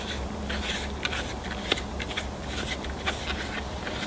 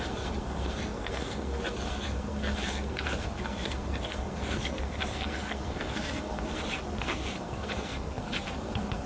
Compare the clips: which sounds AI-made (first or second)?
second